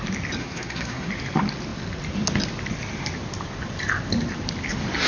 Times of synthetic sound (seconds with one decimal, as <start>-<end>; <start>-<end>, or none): 0.4-1.1